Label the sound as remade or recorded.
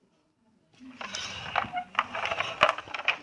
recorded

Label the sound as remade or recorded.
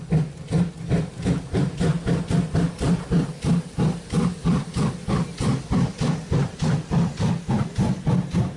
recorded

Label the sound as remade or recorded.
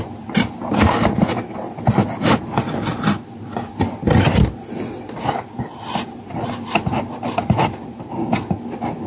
recorded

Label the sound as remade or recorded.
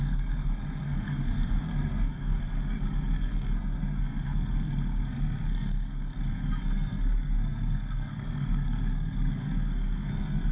remade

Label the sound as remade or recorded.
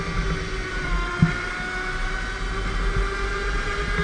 recorded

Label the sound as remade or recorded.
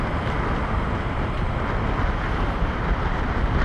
recorded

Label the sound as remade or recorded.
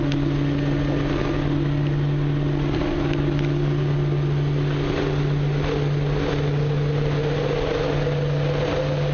recorded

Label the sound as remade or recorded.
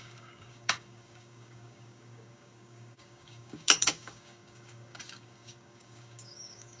remade